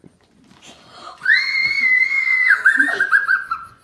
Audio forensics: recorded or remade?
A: remade